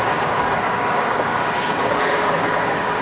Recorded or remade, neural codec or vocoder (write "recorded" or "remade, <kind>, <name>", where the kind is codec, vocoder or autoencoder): remade, codec, DAC